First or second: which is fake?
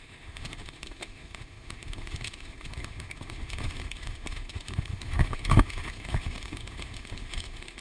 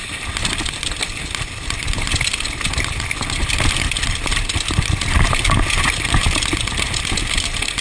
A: first